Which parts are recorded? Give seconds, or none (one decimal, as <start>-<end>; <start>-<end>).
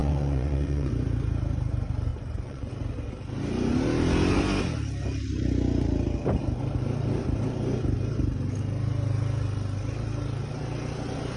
0.9-2.1; 2.7-11.4